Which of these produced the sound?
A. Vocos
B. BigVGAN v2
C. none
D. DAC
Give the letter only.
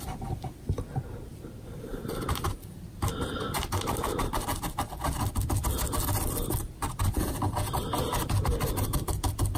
C